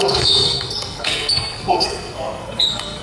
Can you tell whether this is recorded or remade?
remade